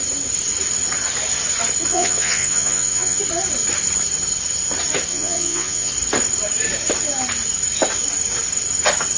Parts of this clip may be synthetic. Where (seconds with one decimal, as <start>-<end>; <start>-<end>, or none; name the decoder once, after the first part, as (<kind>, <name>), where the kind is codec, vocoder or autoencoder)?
1.9-3.2 (vocoder, Vocos); 5.1-5.9